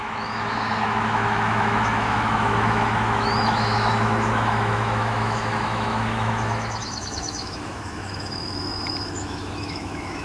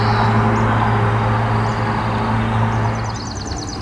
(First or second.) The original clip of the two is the second